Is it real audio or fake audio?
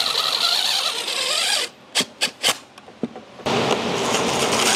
fake